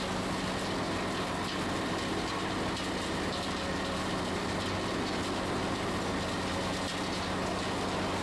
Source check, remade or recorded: recorded